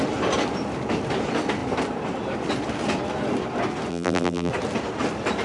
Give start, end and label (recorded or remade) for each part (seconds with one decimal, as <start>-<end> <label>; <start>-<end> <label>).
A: 0.0-3.9 recorded; 3.9-4.5 remade; 4.5-5.4 recorded